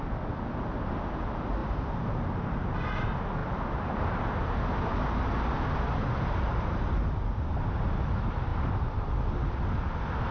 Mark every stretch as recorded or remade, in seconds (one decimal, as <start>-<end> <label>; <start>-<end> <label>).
0.0-1.6 recorded; 1.6-3.0 remade; 3.0-8.5 recorded; 8.5-9.1 remade; 9.1-10.3 recorded